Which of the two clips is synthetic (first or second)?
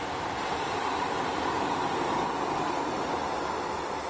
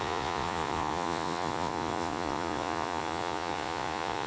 second